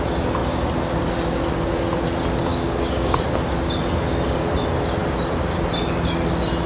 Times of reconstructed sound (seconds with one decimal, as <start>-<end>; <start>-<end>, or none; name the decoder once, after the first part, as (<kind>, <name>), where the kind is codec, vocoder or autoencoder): 2.5-3.2 (codec, DAC)